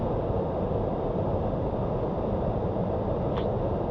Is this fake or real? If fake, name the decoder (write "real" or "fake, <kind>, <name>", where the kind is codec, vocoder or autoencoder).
real